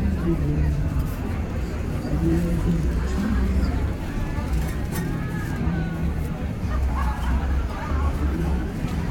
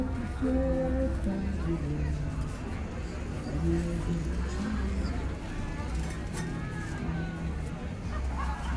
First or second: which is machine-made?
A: first